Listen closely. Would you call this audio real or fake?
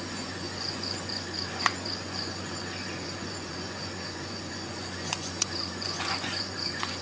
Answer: fake